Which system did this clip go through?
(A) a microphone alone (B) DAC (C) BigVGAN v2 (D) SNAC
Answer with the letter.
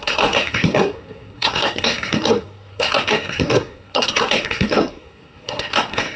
D